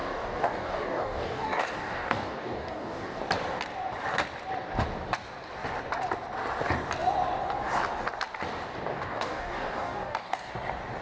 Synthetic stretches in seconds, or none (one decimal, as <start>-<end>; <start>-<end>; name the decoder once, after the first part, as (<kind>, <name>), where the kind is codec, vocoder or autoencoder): 0.0-3.2 (codec, DAC); 8.9-10.5